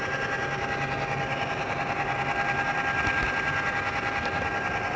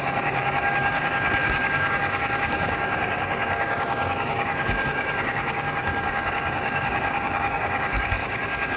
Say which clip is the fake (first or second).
second